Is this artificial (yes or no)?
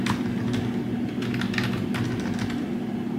no